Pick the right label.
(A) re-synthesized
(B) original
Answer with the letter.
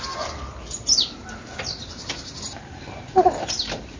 B